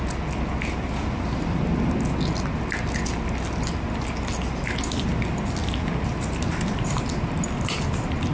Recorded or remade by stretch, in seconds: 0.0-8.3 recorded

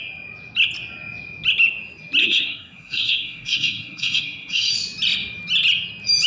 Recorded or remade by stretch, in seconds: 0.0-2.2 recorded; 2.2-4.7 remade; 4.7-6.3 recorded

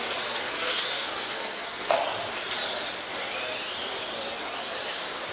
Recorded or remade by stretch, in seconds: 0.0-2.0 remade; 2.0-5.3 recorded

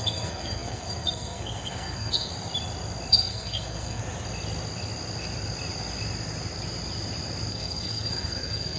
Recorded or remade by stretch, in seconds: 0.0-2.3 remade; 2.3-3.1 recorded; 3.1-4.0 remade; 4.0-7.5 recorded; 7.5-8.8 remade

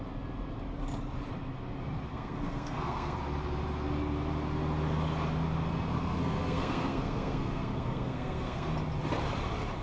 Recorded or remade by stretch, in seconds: 0.0-2.1 recorded; 2.1-3.2 remade; 3.2-5.9 recorded; 5.9-8.7 remade; 8.7-9.8 recorded